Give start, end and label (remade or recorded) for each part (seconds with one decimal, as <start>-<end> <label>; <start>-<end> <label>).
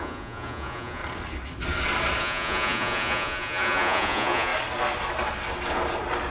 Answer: 0.0-1.0 remade; 1.0-2.2 recorded; 2.2-4.5 remade; 4.5-6.3 recorded